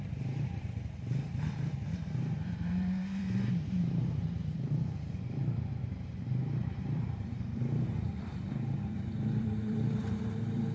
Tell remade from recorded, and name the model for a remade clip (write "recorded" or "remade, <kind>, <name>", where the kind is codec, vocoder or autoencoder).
remade, vocoder, BigVGAN v2